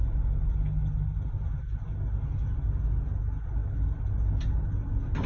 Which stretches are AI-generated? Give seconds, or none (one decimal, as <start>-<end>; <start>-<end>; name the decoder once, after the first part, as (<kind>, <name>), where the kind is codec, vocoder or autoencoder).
none

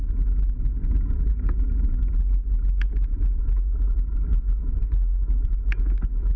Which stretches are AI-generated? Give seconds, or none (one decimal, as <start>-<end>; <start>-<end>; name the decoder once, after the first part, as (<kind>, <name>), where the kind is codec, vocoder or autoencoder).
none

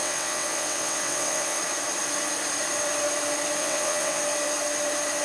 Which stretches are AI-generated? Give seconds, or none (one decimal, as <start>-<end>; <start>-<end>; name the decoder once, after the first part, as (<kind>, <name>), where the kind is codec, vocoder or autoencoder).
0.0-1.6 (vocoder, WaveNeXt); 3.6-4.2

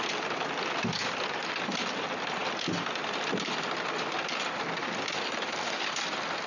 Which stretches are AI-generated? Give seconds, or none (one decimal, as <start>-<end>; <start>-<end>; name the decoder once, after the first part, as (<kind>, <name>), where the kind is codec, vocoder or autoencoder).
none